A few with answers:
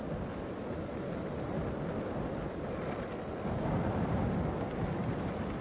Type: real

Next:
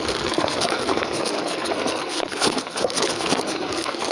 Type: fake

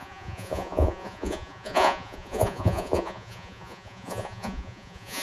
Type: fake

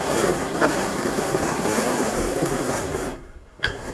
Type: fake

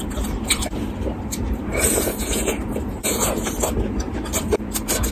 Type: fake